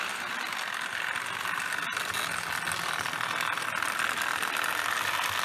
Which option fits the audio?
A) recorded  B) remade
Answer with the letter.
A